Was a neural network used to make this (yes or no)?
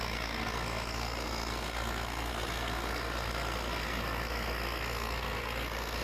yes